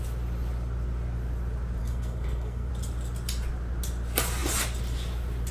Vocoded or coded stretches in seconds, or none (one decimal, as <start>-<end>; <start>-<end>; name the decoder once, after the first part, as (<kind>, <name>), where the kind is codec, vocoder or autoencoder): 1.8-2.7 (codec, SNAC)